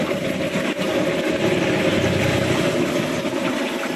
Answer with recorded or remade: recorded